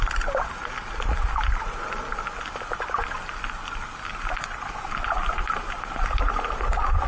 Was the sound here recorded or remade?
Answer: recorded